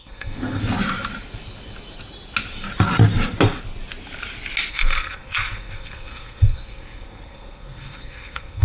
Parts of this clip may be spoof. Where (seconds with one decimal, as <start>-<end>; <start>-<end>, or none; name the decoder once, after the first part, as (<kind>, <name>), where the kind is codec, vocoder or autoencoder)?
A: 0.0-0.6 (codec, SNAC); 4.7-8.6